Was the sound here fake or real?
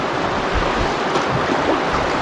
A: real